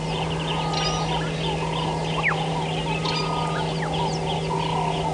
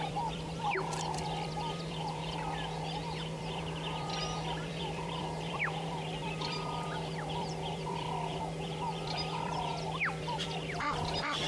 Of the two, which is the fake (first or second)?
second